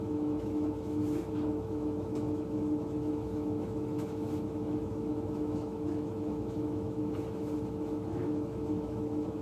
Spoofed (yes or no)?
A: yes